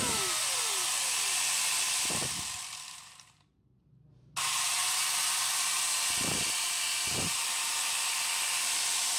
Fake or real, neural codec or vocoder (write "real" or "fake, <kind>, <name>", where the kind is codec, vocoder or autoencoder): real